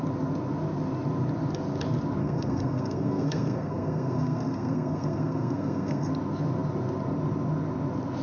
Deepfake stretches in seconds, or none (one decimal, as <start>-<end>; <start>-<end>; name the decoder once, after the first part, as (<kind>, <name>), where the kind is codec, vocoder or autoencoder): 2.2-6.1 (codec, SNAC)